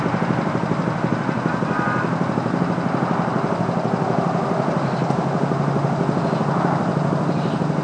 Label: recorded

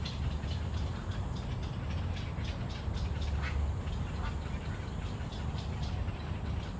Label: recorded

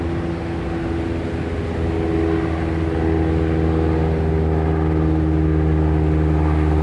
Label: recorded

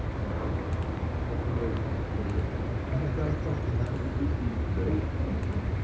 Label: recorded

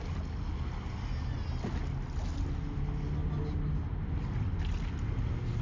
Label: recorded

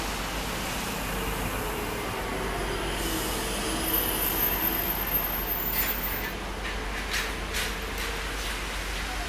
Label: recorded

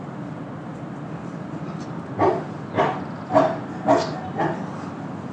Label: recorded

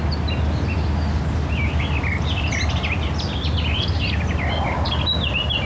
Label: recorded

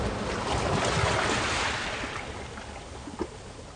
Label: recorded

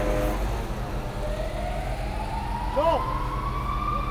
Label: recorded